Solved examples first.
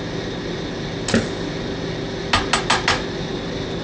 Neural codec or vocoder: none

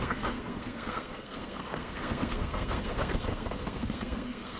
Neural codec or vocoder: codec, SNAC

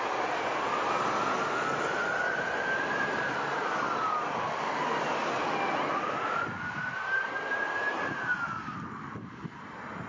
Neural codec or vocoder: none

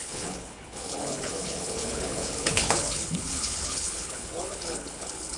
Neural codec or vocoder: codec, HILCodec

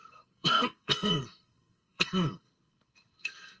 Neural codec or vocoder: codec, SNAC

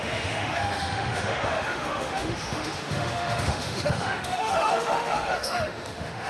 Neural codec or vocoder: autoencoder, DAC-VAE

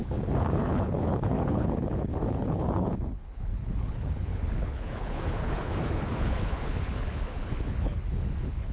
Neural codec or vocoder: codec, HILCodec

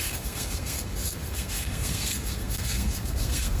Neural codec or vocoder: codec, SNAC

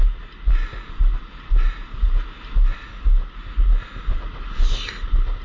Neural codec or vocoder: none